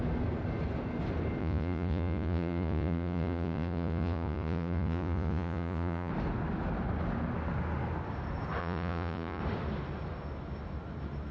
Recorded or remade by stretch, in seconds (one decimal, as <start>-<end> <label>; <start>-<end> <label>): 0.0-1.4 recorded; 1.4-6.1 remade; 6.1-8.6 recorded; 8.6-9.4 remade; 9.4-11.3 recorded